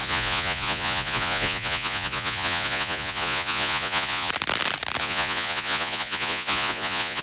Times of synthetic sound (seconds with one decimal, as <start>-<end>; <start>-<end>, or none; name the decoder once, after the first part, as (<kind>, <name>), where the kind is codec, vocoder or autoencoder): 0.0-4.3 (vocoder, Vocos); 5.0-7.2